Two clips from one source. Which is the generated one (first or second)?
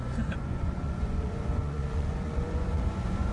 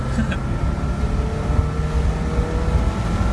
first